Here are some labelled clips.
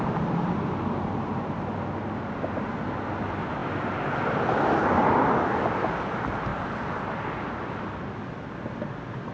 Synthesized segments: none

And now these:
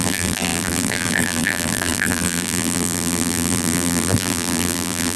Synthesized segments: 0.0-5.2 (vocoder, BigVGAN v2)

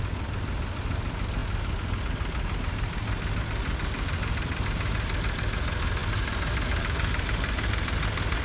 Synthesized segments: none

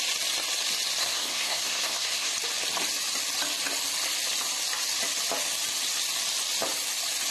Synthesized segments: 1.0-2.3 (codec, SNAC)

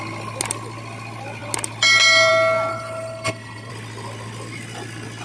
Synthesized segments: 2.7-3.7 (codec, HILCodec)

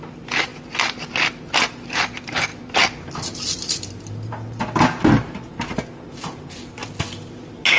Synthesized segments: none